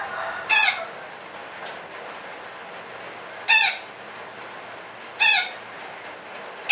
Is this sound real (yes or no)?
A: yes